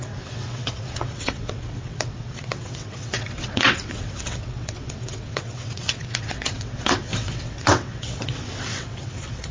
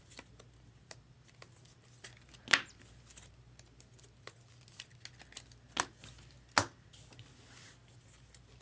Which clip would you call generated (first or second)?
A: first